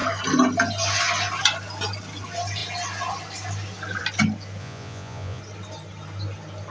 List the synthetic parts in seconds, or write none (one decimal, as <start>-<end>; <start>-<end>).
4.6-5.4

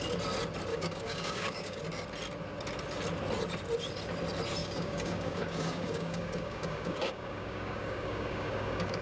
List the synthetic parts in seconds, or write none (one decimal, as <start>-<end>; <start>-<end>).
0.7-1.8; 4.6-9.0

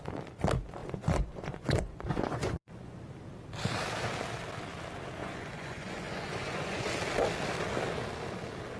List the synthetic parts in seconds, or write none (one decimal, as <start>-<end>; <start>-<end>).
0.8-3.0; 5.2-6.9

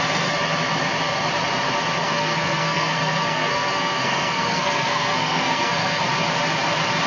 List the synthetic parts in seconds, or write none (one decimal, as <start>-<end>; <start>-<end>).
2.0-6.0

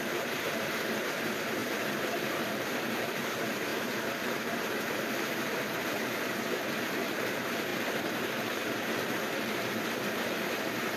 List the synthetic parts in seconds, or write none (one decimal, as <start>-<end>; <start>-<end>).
0.0-11.0

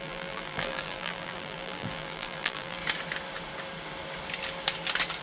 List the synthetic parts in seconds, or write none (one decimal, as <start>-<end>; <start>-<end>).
0.0-2.8